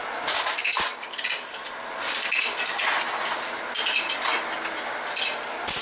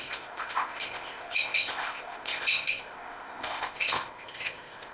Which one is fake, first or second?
second